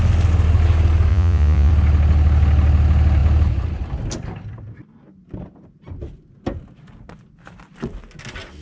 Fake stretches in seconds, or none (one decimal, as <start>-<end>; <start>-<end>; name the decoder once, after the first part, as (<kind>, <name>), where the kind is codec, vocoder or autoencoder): 1.1-1.7 (vocoder, Vocos)